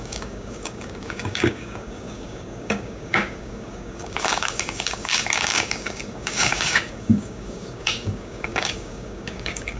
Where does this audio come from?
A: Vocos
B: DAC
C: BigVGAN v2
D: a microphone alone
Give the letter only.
B